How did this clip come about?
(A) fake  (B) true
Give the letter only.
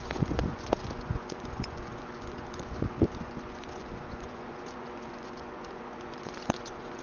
A